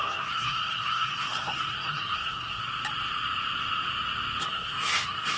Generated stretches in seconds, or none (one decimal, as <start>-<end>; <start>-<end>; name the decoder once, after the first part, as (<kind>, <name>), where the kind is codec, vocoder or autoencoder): 0.0-2.6 (codec, SNAC); 4.4-5.4